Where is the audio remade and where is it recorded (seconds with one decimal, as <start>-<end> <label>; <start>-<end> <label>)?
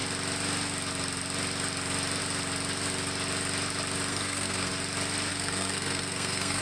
0.0-4.1 recorded; 4.1-4.7 remade; 4.7-5.3 recorded; 5.3-6.6 remade